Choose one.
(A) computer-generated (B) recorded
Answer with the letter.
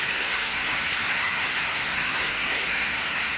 A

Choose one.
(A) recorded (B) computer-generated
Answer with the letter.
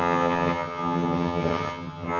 B